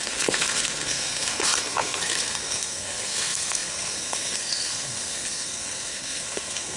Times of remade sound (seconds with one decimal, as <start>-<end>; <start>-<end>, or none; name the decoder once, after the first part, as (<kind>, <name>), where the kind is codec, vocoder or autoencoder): 0.0-6.8 (codec, SNAC)